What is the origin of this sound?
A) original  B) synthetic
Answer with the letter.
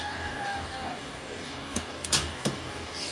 B